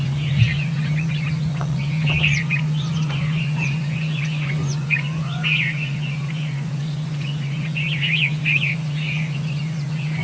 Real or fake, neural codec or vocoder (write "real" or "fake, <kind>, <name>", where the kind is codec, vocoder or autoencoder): fake, vocoder, Vocos